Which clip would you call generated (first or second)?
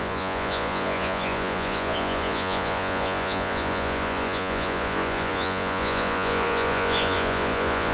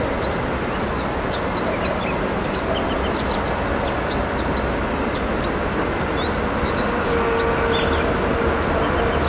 first